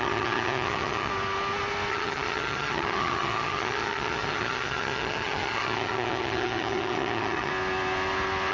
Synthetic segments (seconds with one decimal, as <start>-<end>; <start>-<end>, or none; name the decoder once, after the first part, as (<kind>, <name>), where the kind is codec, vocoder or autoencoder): 0.0-1.1 (vocoder, HiFi-GAN); 1.9-7.5